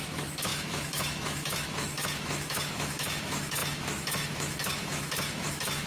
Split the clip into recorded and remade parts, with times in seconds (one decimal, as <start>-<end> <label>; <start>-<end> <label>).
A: 0.0-5.9 remade